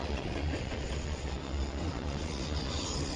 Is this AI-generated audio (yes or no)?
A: yes